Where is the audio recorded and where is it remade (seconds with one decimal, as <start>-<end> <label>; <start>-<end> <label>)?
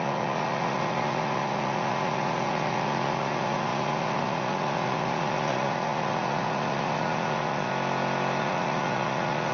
0.0-7.7 remade; 7.7-8.4 recorded; 8.4-9.5 remade